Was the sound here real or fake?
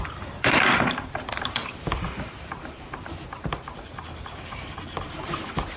fake